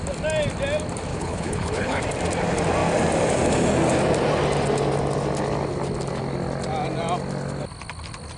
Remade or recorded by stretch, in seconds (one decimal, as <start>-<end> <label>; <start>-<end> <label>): 0.0-1.1 recorded; 1.1-2.0 remade; 2.0-8.4 recorded